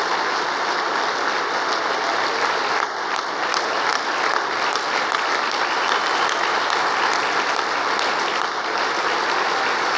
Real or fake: real